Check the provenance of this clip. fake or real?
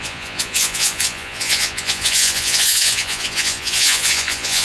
fake